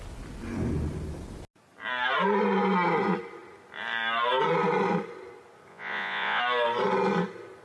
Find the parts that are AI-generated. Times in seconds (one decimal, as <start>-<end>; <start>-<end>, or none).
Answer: 5.7-6.4